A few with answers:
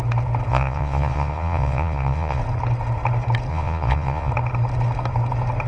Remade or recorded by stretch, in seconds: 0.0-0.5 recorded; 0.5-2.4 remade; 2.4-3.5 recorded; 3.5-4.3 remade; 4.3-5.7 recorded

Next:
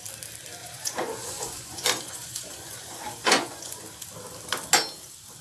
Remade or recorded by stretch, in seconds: 0.0-0.6 recorded; 0.6-3.8 remade; 3.8-5.4 recorded

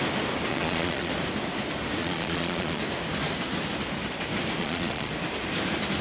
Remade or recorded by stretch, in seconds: 0.0-0.5 recorded; 0.5-1.1 remade; 1.1-2.0 recorded; 2.0-2.8 remade; 2.8-4.6 recorded; 4.6-5.1 remade; 5.1-6.0 recorded

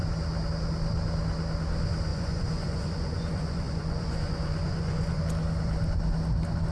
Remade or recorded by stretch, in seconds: 0.0-2.1 recorded; 2.1-5.2 remade; 5.2-6.7 recorded